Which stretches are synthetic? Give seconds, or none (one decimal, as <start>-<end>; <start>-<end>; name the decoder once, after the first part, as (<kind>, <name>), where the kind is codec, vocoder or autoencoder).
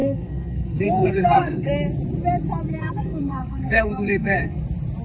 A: 0.0-1.7 (codec, SNAC); 2.8-4.6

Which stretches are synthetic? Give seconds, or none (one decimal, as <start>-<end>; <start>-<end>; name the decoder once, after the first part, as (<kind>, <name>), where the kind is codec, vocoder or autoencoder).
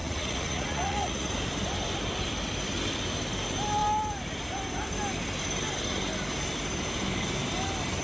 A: 0.0-1.3 (vocoder, Vocos)